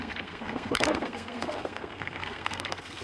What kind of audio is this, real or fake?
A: fake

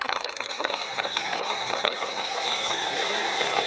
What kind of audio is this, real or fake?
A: fake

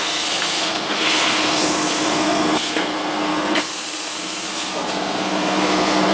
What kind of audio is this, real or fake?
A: fake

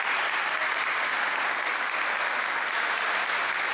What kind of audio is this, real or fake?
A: real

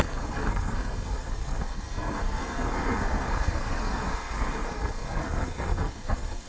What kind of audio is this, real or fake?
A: fake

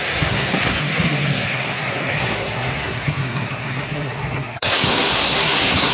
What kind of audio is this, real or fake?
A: fake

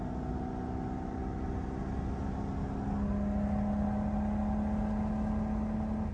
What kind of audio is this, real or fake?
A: real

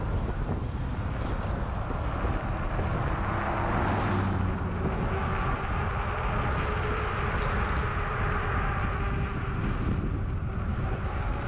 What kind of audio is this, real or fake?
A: real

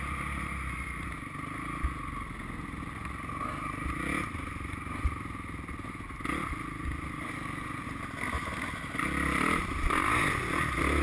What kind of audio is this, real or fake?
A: real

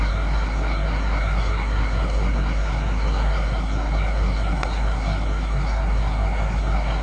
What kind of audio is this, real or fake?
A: fake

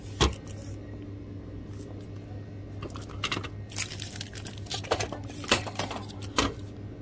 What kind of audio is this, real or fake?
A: real